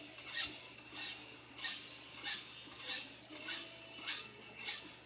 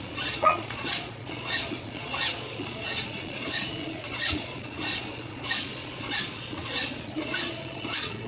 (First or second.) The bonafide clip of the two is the first